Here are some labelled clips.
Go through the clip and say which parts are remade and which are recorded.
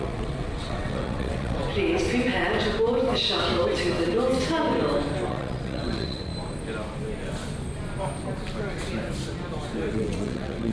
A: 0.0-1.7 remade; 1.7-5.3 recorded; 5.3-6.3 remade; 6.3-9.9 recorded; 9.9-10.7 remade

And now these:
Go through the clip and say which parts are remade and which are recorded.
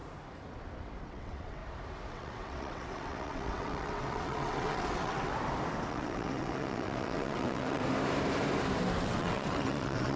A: 0.0-1.0 recorded; 1.0-1.6 remade; 1.6-2.1 recorded; 2.1-5.3 remade; 5.3-5.9 recorded; 5.9-7.8 remade; 7.8-9.0 recorded; 9.0-10.2 remade